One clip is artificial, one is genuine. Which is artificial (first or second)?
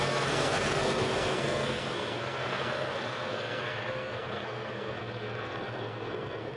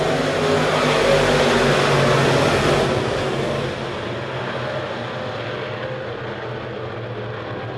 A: first